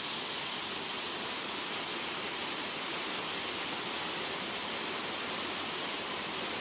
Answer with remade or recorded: recorded